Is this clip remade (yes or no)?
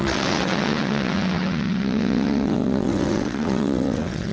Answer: yes